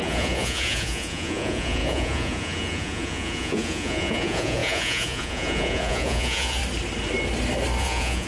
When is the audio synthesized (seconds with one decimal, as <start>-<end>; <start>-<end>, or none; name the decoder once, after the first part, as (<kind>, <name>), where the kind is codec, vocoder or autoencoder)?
0.0-6.6 (vocoder, Vocos); 7.8-8.3